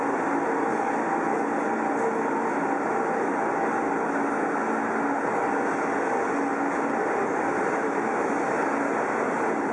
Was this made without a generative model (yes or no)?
yes